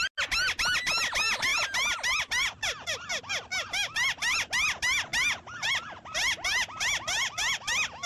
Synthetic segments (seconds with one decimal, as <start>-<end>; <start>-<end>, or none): none